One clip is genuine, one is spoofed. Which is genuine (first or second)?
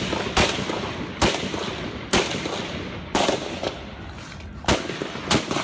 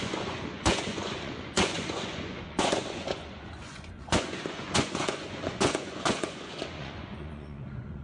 first